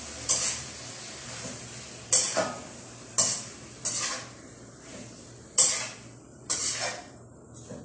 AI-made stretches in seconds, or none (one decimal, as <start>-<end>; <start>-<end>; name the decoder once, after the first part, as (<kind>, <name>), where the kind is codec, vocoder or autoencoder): none